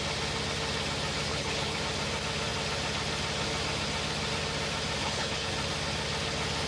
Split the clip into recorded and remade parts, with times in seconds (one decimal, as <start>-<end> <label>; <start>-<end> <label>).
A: 0.0-1.3 recorded; 1.3-1.8 remade; 1.8-5.0 recorded; 5.0-5.5 remade; 5.5-6.7 recorded